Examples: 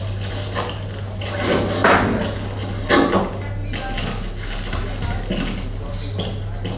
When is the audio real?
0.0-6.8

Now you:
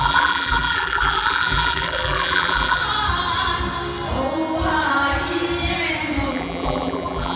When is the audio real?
2.8-6.3

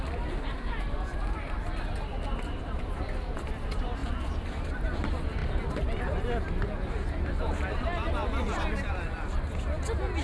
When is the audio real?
0.0-2.1; 3.0-4.0; 5.0-10.2